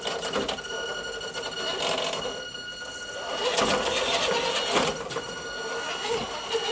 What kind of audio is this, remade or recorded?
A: recorded